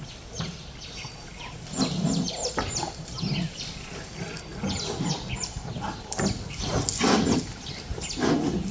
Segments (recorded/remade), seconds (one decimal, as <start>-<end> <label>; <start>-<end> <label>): 0.0-8.7 recorded